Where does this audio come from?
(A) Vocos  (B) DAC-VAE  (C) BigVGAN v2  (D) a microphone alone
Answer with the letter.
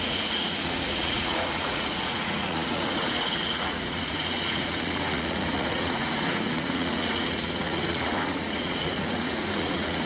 A